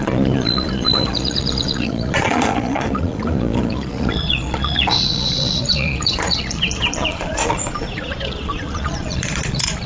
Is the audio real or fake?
fake